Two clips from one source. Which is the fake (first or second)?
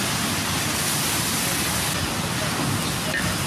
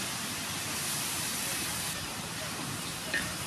second